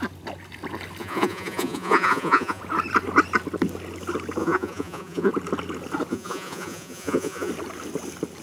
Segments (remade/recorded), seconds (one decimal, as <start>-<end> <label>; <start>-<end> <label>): 0.0-1.0 recorded; 1.0-2.6 remade; 2.6-4.4 recorded; 4.4-5.3 remade; 5.3-6.1 recorded; 6.1-7.5 remade; 7.5-8.4 recorded

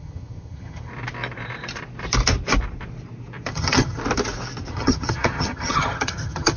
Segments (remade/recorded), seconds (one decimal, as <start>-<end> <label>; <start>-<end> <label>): 0.0-0.9 remade; 0.9-3.5 recorded; 3.5-4.0 remade; 4.0-4.7 recorded; 4.7-6.6 remade

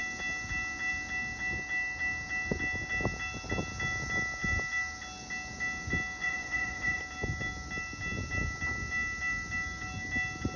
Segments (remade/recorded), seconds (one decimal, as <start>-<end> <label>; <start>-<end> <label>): 0.0-6.2 recorded; 6.2-7.0 remade; 7.0-10.6 recorded

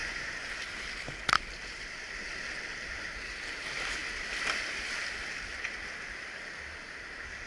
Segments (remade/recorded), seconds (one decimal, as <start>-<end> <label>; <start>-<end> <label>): 0.0-0.5 remade; 0.5-7.5 recorded

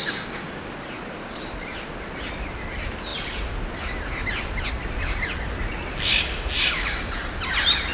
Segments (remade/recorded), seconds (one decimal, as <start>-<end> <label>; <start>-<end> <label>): 0.0-0.7 remade; 0.7-7.9 recorded

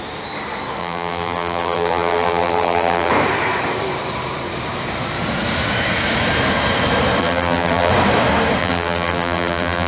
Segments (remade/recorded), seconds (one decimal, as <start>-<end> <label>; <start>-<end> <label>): 0.0-0.8 recorded; 0.8-3.1 remade; 3.1-7.2 recorded; 7.2-7.9 remade; 7.9-8.6 recorded; 8.6-9.9 remade

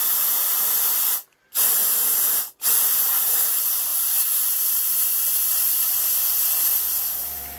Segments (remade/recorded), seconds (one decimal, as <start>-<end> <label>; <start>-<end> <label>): 0.0-0.6 remade; 0.6-3.9 recorded; 3.9-5.7 remade; 5.7-7.6 recorded

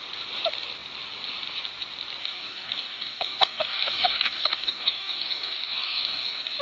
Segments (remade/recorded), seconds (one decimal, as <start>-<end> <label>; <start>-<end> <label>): 0.0-2.2 recorded; 2.2-6.6 remade